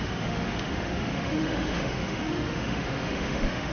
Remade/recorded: remade